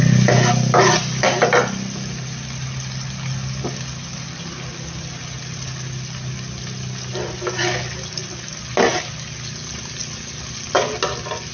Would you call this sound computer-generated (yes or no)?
no